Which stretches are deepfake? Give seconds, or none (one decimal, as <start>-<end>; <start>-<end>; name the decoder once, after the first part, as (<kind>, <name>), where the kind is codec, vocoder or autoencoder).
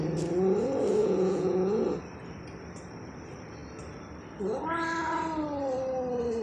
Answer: 1.0-1.8 (vocoder, Vocos)